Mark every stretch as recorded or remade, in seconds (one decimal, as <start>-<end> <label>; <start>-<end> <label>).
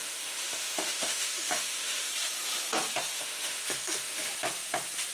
0.0-2.1 remade; 2.1-3.1 recorded; 3.1-4.3 remade; 4.3-5.1 recorded